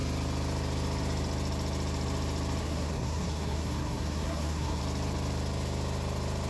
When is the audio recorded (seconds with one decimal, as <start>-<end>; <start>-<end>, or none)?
0.0-2.6; 4.8-6.5